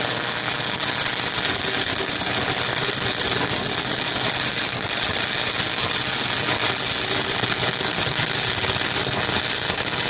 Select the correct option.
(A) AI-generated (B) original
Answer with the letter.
B